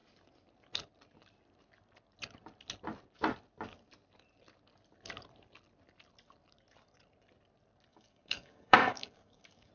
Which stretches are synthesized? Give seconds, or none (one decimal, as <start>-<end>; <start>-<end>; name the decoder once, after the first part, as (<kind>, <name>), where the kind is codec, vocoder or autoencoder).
7.9-9.7 (codec, DAC)